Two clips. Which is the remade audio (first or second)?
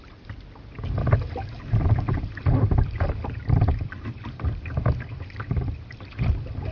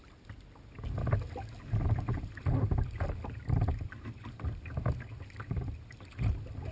first